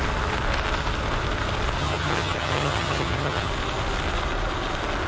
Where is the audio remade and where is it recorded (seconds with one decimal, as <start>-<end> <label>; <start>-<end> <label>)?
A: 0.0-1.8 recorded; 1.8-3.5 remade; 3.5-5.1 recorded